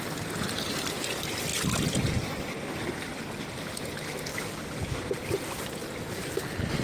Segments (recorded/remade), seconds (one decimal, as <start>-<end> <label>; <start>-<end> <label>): 0.0-4.3 recorded; 4.3-5.0 remade; 5.0-6.8 recorded